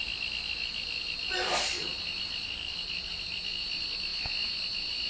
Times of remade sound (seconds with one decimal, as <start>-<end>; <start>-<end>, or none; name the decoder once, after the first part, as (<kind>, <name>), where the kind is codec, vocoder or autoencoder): none